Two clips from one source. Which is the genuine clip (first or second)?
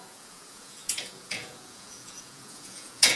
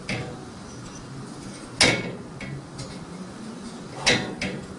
second